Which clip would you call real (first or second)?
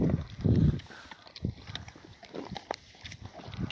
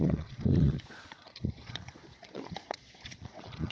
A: first